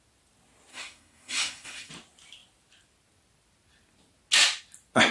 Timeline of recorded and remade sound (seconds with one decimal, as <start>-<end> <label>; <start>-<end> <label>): 0.0-0.7 recorded; 0.7-1.9 remade; 1.9-5.1 recorded